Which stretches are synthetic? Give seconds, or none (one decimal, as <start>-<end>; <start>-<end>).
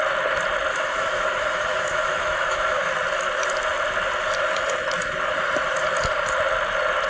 0.7-2.9